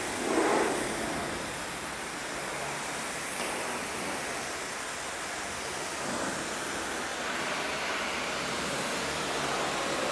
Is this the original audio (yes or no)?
yes